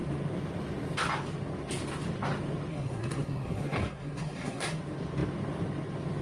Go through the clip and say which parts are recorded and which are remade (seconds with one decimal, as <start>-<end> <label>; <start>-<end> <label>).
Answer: 0.0-2.7 recorded; 2.7-4.8 remade; 4.8-6.2 recorded